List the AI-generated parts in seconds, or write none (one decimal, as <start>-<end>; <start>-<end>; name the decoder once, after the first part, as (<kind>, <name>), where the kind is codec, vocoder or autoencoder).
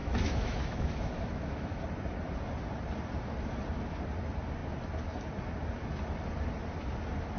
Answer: 0.0-1.8 (autoencoder, DAC-VAE)